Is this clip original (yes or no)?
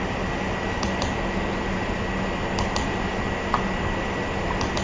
yes